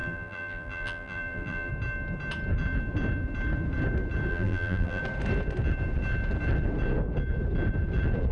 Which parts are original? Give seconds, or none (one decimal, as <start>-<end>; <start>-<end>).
1.7-4.3; 5.0-8.3